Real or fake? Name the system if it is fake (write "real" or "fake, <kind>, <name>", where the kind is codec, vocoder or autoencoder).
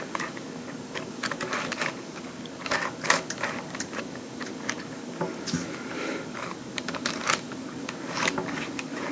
fake, codec, DAC